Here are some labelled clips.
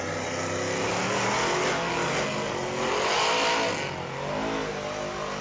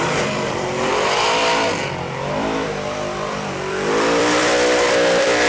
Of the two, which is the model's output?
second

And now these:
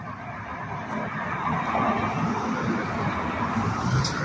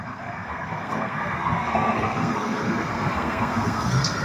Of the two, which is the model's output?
second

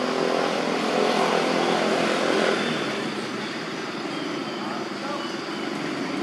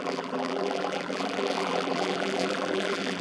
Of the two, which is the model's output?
second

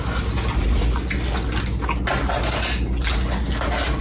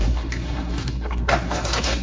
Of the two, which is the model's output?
second